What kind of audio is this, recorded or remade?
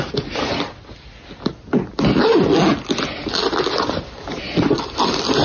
recorded